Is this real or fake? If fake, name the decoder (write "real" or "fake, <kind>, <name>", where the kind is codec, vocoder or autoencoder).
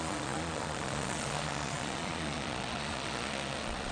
fake, vocoder, Vocos